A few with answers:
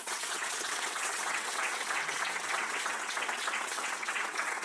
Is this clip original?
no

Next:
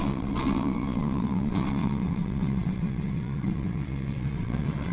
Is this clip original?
no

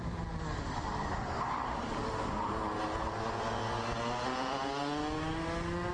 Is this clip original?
yes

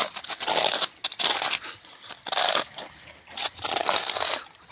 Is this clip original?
yes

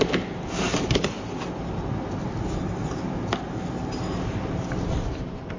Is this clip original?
yes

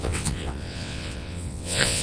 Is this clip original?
no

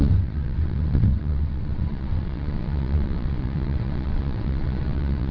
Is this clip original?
no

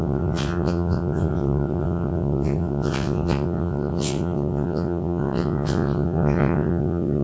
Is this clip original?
no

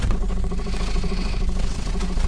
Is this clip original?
no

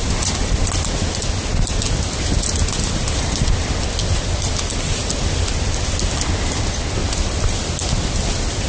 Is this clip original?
yes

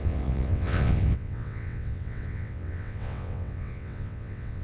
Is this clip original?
no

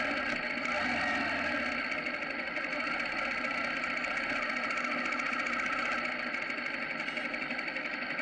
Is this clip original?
yes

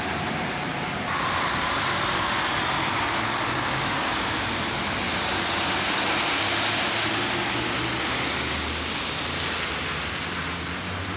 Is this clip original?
yes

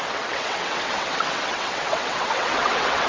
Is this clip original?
no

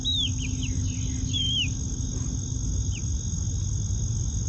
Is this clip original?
yes